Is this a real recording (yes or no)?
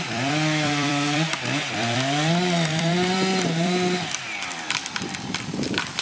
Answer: no